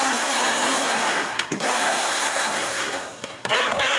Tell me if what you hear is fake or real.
fake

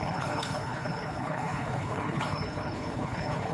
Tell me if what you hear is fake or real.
fake